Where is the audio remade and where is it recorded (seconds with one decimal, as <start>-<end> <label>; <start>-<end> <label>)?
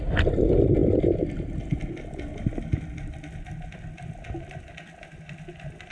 0.0-5.9 recorded